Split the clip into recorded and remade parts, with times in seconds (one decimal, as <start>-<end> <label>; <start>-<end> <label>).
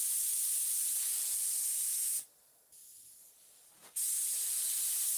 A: 0.0-1.1 recorded; 1.1-2.0 remade; 2.0-5.2 recorded